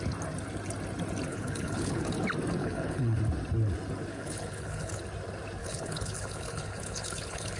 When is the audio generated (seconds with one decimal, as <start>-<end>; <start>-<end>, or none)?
1.3-2.0; 2.6-3.2; 4.1-5.0; 5.6-7.6